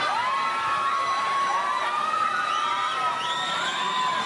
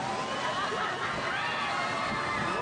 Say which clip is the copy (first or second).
first